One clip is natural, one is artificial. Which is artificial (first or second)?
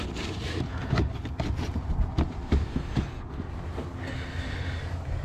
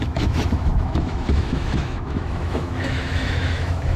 second